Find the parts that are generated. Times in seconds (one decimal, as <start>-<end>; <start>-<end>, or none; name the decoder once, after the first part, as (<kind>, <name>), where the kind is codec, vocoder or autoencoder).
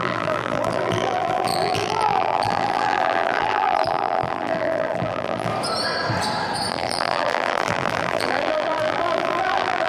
0.0-5.5 (vocoder, BigVGAN v2); 6.7-9.9